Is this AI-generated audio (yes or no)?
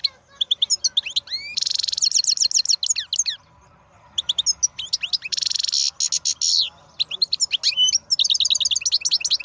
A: no